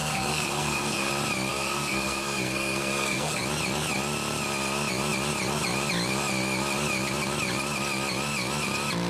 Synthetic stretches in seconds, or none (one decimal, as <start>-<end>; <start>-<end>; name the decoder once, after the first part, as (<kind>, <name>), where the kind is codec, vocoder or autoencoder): 0.0-1.1 (codec, SNAC); 1.5-3.4